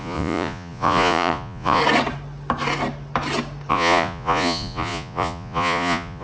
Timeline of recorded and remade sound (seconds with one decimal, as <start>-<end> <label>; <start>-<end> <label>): 0.0-1.8 remade; 1.8-3.7 recorded; 3.7-6.2 remade